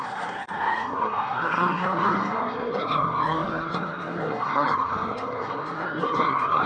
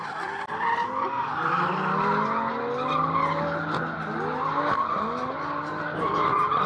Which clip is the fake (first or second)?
first